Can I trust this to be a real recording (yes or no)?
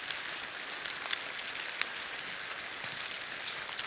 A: yes